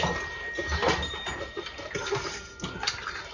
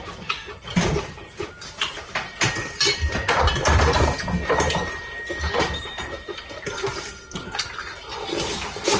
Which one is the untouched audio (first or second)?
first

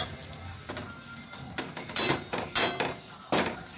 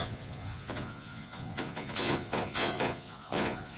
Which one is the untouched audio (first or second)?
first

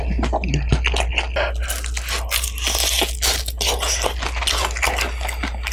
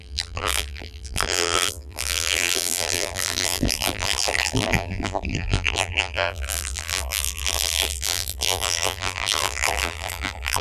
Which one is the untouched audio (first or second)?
first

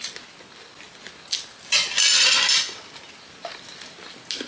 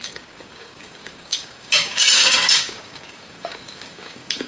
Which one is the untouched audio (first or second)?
first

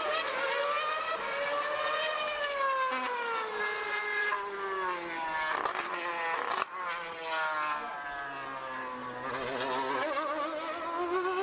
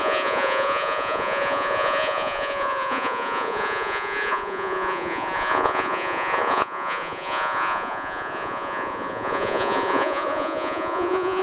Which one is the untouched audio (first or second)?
first